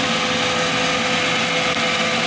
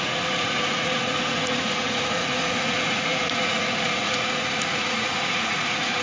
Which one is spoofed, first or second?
second